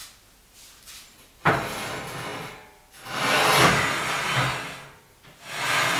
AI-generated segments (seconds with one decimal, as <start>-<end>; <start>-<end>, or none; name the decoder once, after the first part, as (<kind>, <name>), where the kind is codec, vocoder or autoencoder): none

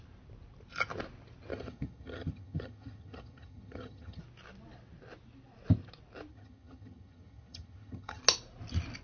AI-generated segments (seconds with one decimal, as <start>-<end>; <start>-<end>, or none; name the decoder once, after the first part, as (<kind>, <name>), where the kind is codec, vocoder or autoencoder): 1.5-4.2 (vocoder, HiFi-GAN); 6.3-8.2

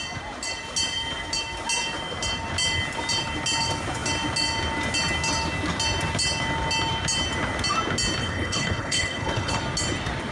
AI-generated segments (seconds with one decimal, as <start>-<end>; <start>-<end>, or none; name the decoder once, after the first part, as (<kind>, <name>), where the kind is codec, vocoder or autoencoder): 8.2-9.6 (codec, HILCodec)